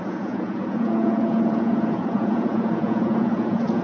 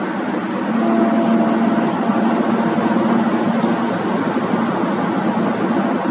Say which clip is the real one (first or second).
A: second